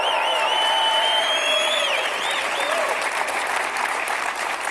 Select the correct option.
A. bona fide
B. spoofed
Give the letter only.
B